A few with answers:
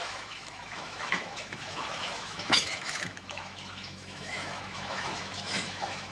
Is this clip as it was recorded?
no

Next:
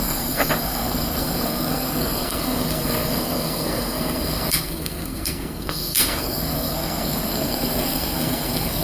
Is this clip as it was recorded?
no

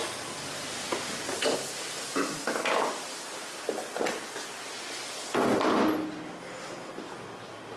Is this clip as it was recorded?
yes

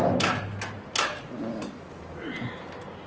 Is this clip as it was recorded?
yes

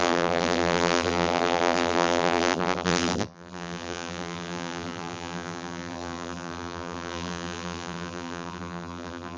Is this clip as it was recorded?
no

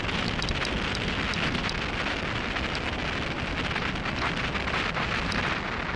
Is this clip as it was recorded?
yes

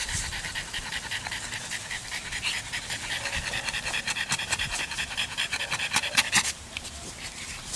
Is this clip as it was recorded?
no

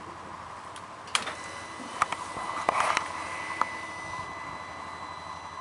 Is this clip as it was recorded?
yes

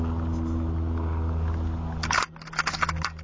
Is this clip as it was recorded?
yes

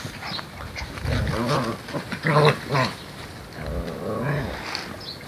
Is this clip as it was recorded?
yes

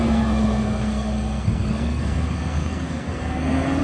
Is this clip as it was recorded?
no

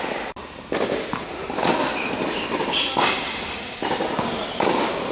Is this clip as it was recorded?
yes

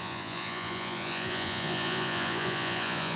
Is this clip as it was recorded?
no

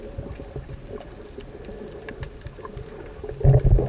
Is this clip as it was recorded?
yes